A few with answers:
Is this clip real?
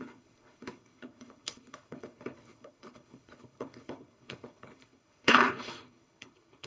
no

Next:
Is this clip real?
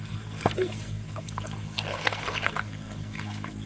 no